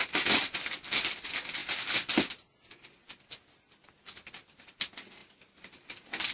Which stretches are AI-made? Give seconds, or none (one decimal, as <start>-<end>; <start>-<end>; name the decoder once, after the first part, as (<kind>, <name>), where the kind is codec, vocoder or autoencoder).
5.2-6.3 (vocoder, BigVGAN v2)